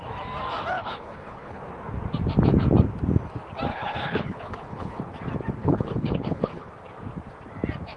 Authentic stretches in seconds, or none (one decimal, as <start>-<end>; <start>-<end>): 0.0-0.7; 1.6-3.7; 5.0-5.6; 6.7-8.0